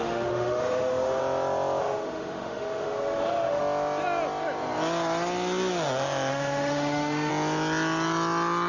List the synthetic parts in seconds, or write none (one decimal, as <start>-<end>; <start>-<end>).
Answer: 0.0-1.2; 1.8-3.6; 6.3-7.3